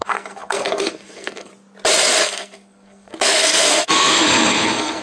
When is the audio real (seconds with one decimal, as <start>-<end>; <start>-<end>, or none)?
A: 1.5-2.2